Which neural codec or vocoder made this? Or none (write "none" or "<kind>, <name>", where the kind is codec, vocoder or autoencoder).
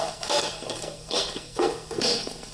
codec, SNAC